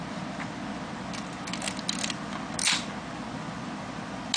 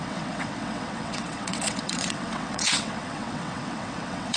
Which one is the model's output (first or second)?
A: second